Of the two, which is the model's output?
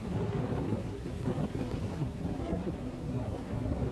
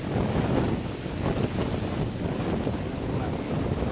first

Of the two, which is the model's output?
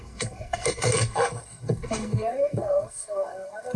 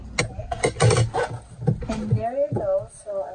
first